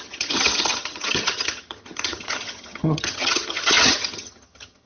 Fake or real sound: fake